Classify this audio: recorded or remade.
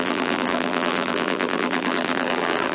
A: remade